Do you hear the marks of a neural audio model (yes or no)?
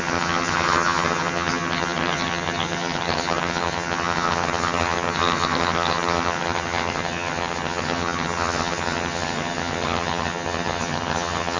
yes